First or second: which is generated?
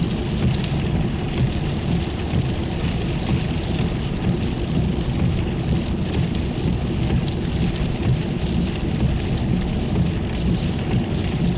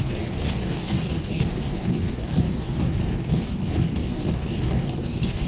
second